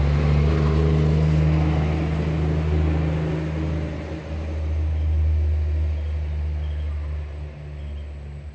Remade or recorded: recorded